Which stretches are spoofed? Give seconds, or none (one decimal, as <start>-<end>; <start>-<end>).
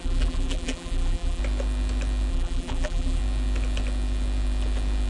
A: 0.0-1.4; 2.3-3.2